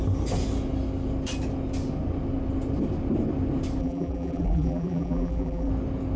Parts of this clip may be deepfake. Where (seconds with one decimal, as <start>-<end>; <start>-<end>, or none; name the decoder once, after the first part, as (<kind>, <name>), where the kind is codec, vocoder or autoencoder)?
3.8-5.7 (vocoder, BigVGAN v2)